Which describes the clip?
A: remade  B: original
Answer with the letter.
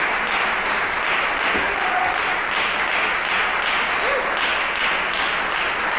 B